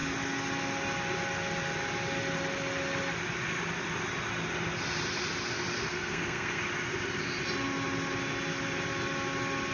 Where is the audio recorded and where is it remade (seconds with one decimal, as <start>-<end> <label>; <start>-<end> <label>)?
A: 0.0-5.9 recorded; 5.9-6.6 remade; 6.6-9.7 recorded